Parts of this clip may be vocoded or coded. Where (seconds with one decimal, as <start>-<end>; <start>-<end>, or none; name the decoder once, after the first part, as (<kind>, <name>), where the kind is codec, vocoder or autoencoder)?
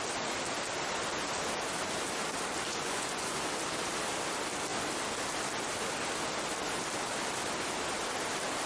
2.7-3.4 (vocoder, Vocos)